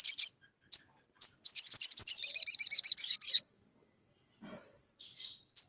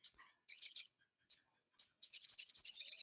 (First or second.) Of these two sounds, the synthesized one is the second